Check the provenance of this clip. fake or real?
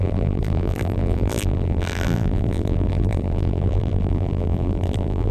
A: fake